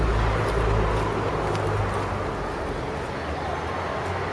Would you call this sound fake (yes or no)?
no